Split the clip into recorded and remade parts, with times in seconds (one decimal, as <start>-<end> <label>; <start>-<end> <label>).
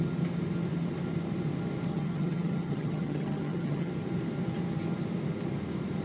0.0-1.9 recorded; 1.9-3.9 remade; 3.9-6.0 recorded